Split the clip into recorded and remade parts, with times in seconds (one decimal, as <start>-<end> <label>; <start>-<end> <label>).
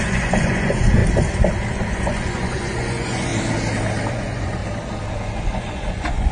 0.0-1.0 remade; 1.0-1.9 recorded; 1.9-3.3 remade; 3.3-4.1 recorded; 4.1-4.6 remade; 4.6-5.1 recorded; 5.1-6.3 remade